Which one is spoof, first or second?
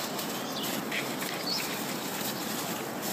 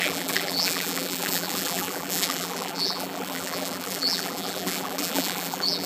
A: second